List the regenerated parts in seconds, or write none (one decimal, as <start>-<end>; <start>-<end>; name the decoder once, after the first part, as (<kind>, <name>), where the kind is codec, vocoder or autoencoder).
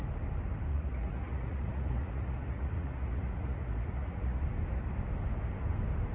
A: 0.7-4.4 (vocoder, Vocos)